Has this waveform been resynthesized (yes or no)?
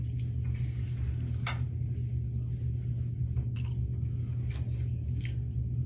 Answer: no